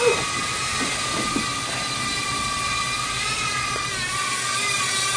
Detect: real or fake real